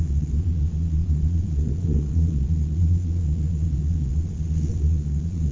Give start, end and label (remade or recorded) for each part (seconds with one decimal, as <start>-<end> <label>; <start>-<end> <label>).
0.0-5.5 remade